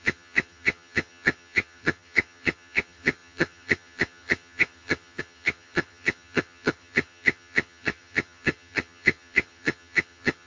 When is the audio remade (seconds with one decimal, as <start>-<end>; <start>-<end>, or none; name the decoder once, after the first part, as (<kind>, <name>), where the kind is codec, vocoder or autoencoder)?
0.0-10.5 (vocoder, HiFi-GAN)